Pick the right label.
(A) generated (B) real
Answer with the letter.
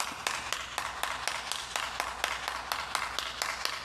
B